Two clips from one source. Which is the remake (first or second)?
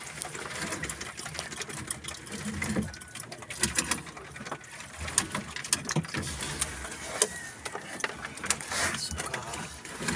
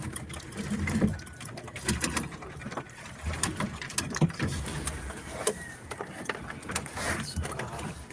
second